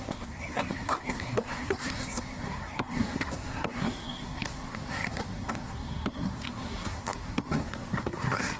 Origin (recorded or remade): remade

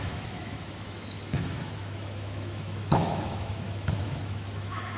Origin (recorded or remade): remade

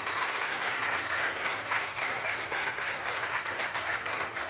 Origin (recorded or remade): remade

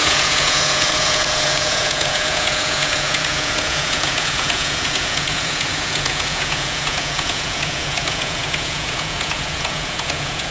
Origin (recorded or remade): remade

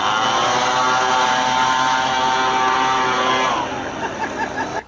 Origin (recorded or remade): recorded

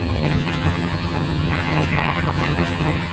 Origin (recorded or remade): remade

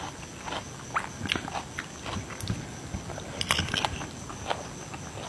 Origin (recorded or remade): recorded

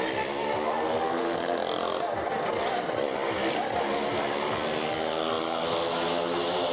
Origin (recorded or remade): recorded